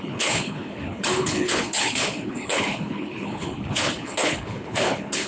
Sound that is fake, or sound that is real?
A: fake